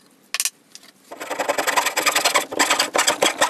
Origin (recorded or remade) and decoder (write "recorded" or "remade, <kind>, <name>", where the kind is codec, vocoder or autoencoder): recorded